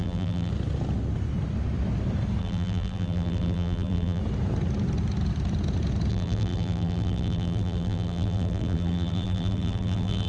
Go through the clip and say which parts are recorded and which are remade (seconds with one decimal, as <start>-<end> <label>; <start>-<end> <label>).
0.0-0.5 remade; 0.5-2.4 recorded; 2.4-4.2 remade; 4.2-6.1 recorded; 6.1-10.3 remade